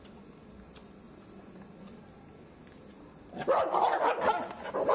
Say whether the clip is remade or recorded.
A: recorded